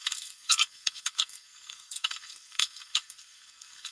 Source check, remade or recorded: remade